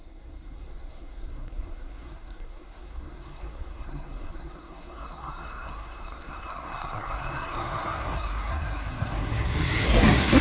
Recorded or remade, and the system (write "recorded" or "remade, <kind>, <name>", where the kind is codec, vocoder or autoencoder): remade, codec, SNAC